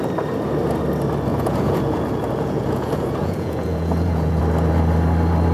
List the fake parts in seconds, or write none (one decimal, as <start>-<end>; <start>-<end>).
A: 1.3-4.4